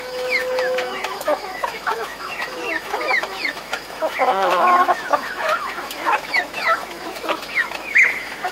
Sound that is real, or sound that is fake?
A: fake